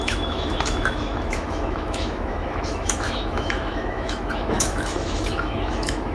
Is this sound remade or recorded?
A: remade